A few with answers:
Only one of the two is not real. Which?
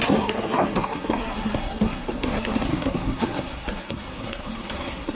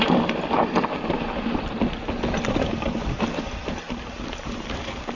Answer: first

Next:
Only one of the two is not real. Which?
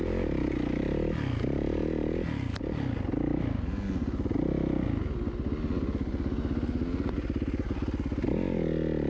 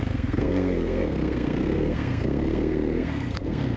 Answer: second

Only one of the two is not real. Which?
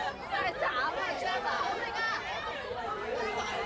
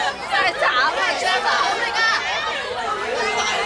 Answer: first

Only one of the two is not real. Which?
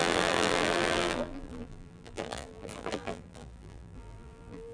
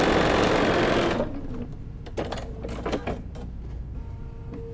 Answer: first